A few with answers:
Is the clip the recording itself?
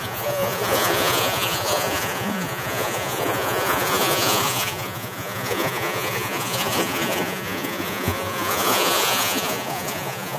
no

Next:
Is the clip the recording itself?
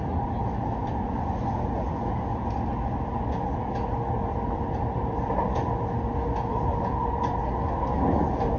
yes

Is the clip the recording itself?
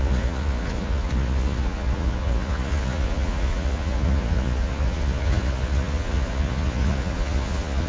no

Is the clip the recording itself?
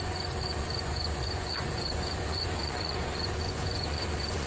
no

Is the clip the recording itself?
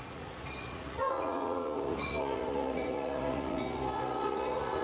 no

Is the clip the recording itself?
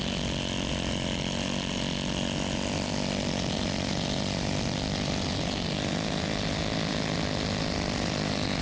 yes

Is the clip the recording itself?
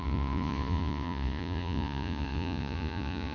no